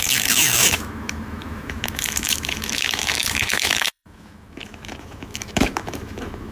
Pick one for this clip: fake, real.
fake